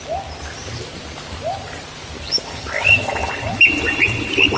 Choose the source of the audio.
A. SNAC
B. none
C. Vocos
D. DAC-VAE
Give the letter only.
B